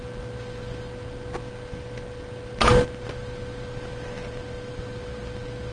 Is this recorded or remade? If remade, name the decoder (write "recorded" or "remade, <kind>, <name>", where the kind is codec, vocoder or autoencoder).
recorded